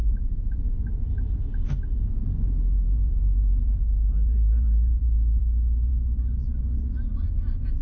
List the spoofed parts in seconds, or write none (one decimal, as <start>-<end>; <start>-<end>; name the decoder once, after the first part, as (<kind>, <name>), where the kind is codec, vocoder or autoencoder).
0.0-1.0 (vocoder, BigVGAN v2); 1.5-5.4